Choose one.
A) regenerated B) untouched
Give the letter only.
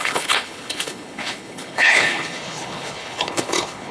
A